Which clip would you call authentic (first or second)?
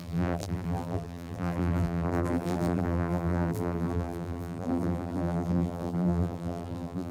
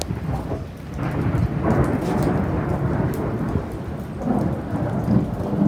second